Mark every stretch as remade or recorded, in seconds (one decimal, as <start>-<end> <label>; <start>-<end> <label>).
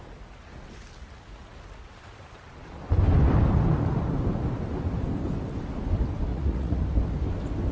0.0-6.3 recorded; 6.3-6.8 remade; 6.8-7.7 recorded